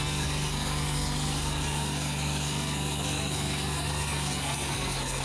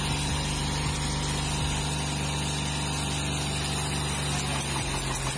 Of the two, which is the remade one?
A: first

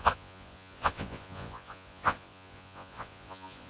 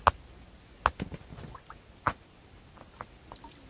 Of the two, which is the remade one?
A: first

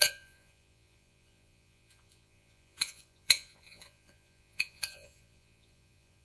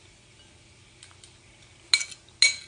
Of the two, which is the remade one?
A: first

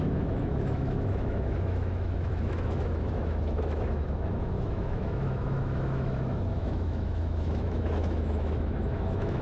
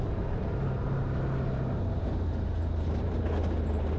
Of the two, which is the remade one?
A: first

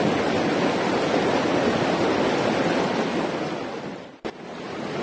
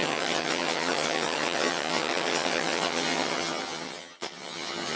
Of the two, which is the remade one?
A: second